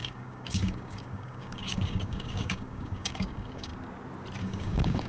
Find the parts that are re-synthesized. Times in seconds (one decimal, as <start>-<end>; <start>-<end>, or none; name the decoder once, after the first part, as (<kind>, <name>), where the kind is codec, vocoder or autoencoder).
0.0-3.7 (codec, DAC); 4.4-5.1